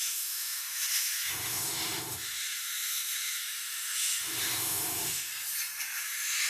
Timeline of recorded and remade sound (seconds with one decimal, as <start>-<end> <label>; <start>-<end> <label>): 0.0-5.3 remade; 5.3-6.0 recorded; 6.0-6.5 remade